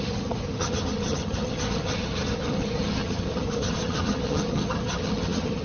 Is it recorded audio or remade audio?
remade